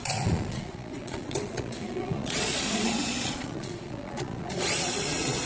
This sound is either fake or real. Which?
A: fake